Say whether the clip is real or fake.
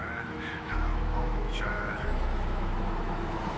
fake